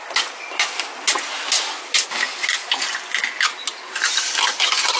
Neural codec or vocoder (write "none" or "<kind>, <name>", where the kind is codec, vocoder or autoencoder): none